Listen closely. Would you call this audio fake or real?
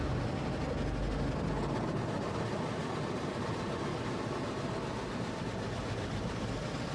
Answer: real